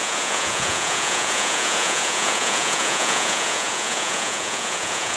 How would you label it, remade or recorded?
remade